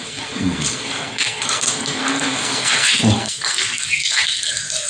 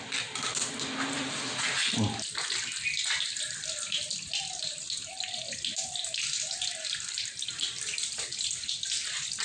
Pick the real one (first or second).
second